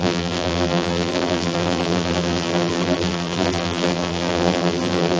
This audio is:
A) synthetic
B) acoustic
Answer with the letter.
A